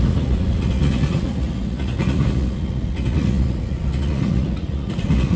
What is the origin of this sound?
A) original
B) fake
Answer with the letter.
B